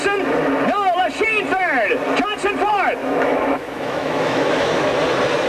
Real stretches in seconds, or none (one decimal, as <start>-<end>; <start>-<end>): 0.0-3.0; 5.0-5.5